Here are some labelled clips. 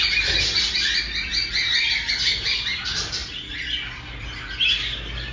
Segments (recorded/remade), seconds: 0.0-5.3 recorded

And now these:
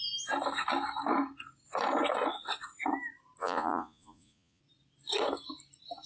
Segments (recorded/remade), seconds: 0.0-3.4 recorded; 3.4-4.6 remade; 4.6-6.1 recorded

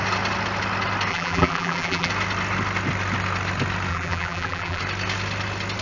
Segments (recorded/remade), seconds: 0.0-1.1 recorded; 1.1-2.1 remade; 2.1-3.9 recorded; 3.9-4.8 remade; 4.8-5.8 recorded

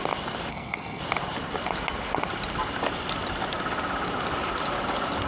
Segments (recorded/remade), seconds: 0.0-0.5 recorded; 0.5-1.0 remade; 1.0-5.3 recorded

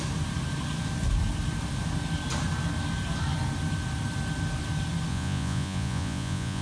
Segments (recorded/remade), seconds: 0.0-5.1 recorded; 5.1-6.6 remade